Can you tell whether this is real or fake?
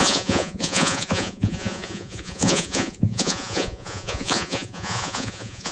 fake